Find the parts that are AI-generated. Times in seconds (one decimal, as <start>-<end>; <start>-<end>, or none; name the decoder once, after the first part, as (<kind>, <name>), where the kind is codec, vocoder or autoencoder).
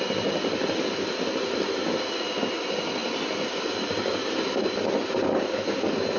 none